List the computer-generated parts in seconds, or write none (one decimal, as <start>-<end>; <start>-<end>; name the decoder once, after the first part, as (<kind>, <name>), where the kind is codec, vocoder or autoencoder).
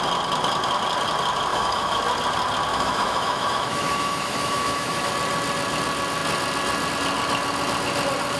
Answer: 1.5-2.0 (autoencoder, DAC-VAE); 2.7-5.1